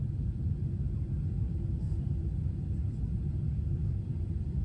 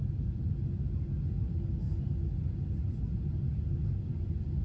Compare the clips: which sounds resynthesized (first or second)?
first